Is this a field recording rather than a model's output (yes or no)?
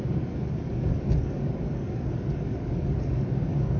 no